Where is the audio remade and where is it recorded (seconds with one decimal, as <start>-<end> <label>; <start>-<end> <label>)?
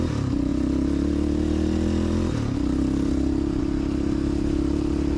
0.0-5.2 recorded